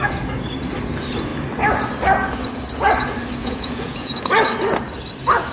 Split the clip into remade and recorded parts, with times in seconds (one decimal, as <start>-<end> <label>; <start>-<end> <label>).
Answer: 0.0-3.4 recorded; 3.4-4.3 remade; 4.3-5.5 recorded